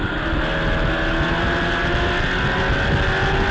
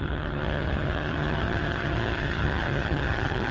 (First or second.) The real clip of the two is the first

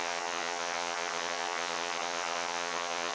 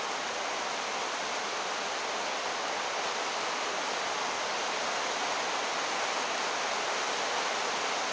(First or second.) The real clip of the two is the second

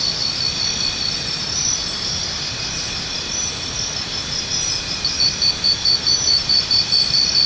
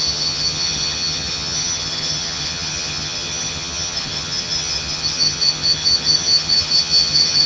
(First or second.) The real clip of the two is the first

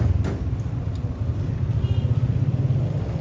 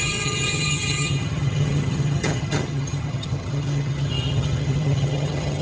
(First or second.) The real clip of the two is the first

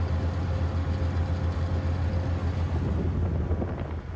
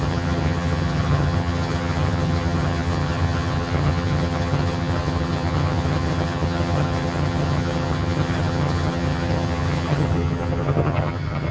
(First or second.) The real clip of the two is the first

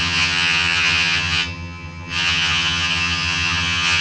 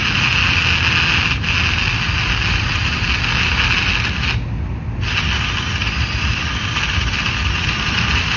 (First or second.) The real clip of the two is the second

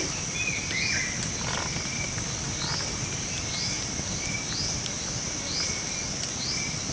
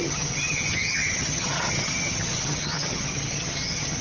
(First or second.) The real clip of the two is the first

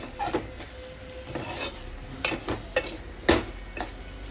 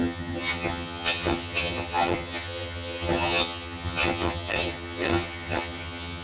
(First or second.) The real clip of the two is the first